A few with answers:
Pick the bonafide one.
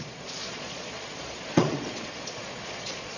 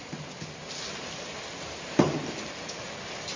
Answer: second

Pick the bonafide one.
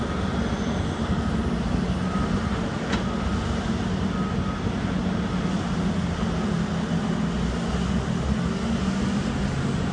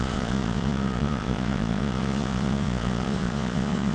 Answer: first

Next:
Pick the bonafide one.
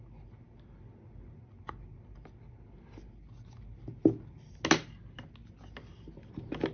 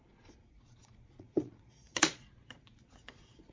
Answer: first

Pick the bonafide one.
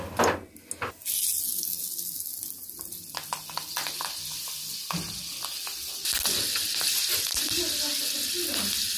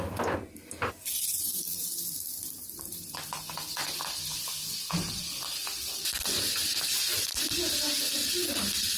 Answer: first